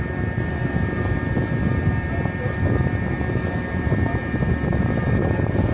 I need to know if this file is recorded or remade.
recorded